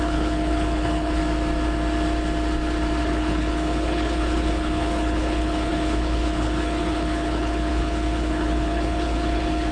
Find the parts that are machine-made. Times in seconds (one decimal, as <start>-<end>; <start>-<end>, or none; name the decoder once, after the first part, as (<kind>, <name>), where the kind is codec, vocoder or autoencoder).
0.0-1.2 (codec, HILCodec); 3.0-9.7